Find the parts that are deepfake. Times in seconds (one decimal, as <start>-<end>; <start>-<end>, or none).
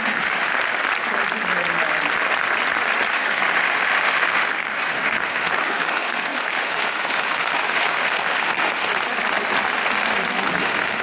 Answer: 0.0-0.5; 3.1-8.9; 10.6-11.0